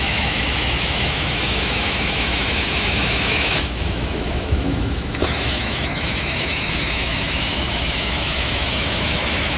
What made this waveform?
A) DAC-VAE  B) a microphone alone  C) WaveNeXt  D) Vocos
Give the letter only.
A